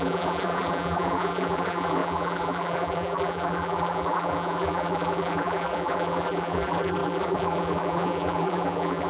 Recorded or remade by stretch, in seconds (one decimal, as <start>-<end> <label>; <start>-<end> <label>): 0.0-9.1 remade